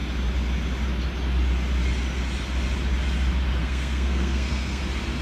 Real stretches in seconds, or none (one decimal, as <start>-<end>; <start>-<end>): 0.0-3.6; 4.8-5.2